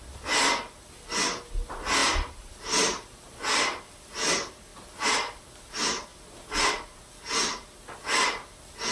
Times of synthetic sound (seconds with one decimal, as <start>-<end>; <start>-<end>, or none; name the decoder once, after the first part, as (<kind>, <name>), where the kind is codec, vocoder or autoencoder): 2.0-2.6 (vocoder, BigVGAN v2); 4.7-5.4; 6.1-6.7